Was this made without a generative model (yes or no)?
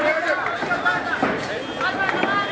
yes